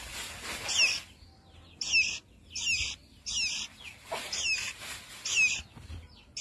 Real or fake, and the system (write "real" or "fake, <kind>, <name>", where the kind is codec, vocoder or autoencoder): real